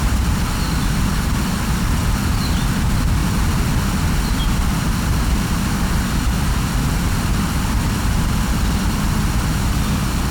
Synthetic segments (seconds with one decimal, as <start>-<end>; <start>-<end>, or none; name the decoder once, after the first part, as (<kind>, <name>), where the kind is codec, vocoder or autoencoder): none